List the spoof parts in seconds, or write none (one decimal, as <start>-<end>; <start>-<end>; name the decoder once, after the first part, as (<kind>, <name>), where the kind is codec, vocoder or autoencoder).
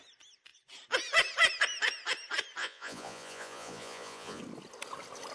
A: 2.6-4.4 (vocoder, Vocos)